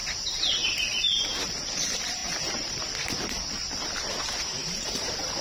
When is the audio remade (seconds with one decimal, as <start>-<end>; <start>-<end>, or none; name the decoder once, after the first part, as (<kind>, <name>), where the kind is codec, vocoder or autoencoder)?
2.2-2.9 (vocoder, BigVGAN v2)